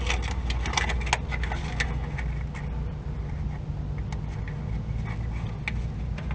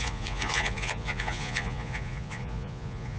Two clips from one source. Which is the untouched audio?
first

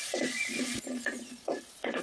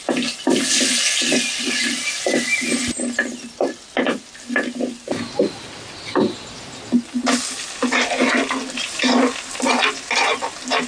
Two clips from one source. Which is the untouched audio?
second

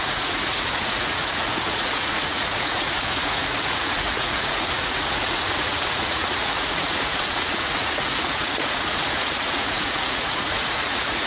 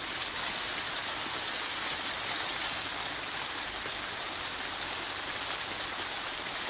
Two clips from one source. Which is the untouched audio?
second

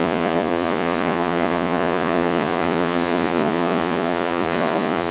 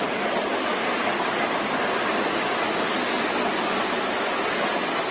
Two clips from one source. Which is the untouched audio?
second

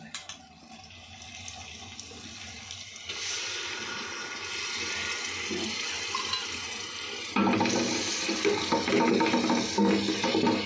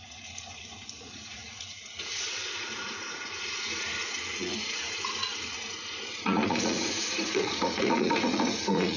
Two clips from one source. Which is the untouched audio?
first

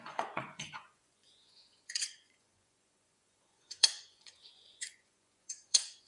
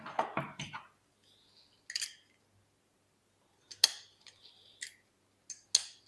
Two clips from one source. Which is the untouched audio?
second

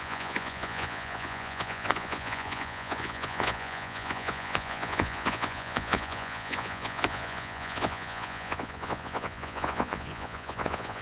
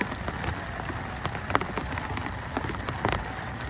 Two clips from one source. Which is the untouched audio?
second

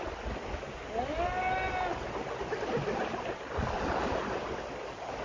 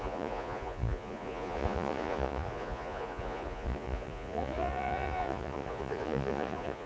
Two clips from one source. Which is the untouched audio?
first